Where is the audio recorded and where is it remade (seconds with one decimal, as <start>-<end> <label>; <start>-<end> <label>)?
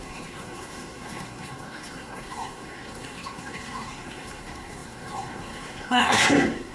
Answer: 0.0-6.7 remade